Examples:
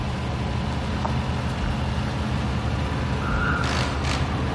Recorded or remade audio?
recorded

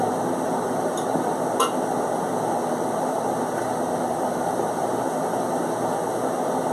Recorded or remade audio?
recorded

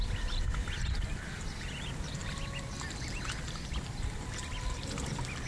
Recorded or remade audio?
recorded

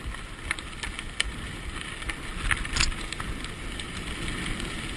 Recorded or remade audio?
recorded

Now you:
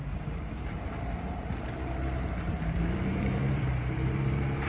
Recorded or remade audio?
remade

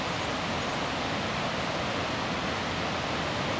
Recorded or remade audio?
recorded